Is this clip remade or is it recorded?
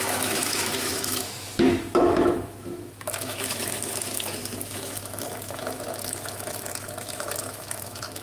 remade